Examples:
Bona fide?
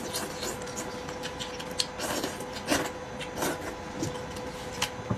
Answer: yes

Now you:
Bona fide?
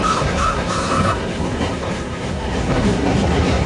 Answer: no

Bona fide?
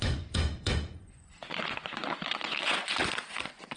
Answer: no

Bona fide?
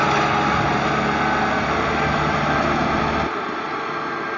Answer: yes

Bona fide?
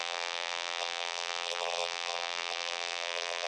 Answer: no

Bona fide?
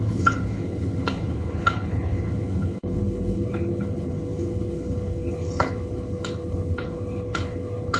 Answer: no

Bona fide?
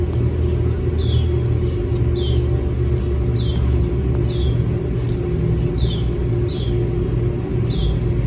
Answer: yes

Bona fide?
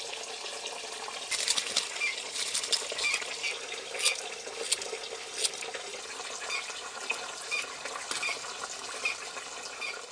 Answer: yes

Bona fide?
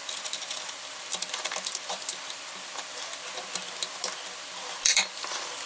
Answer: no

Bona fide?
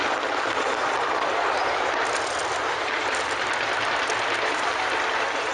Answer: yes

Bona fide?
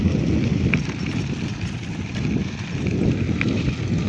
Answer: yes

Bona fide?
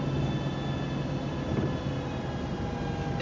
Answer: yes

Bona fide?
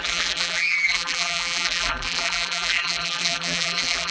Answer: no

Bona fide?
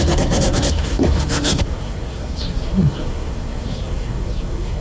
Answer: no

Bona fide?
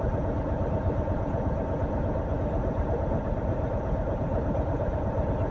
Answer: yes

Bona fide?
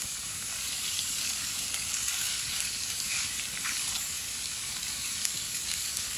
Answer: no